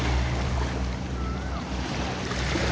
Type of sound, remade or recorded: recorded